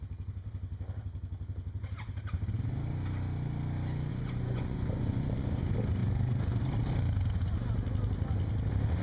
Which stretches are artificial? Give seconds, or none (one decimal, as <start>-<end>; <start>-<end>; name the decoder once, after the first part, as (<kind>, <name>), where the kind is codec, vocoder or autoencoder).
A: 4.1-5.6 (vocoder, Vocos)